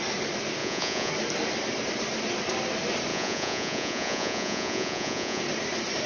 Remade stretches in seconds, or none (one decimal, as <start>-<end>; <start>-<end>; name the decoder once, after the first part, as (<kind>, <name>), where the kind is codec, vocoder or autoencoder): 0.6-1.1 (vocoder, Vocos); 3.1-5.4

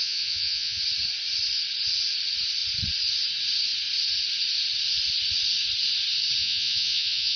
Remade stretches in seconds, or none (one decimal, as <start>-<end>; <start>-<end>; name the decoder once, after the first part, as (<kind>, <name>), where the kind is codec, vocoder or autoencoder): 0.0-0.8 (vocoder, Vocos); 6.4-7.4

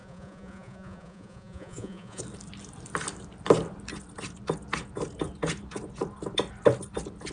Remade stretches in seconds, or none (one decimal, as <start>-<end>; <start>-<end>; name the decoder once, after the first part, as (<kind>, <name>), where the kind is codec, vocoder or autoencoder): 0.0-2.2 (vocoder, Vocos)

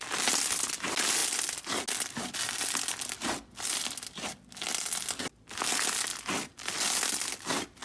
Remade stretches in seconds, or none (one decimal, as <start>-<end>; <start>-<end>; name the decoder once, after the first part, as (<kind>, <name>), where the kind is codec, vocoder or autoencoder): none